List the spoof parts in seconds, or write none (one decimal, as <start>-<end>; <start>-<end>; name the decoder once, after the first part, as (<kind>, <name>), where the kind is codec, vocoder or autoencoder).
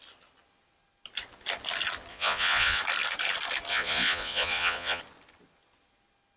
2.1-2.8 (vocoder, Vocos); 3.7-5.0